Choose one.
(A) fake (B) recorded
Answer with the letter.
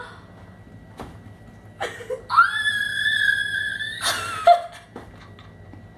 B